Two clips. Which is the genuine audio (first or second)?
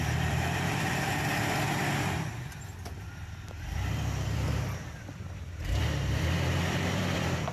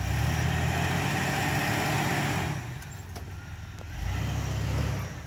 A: second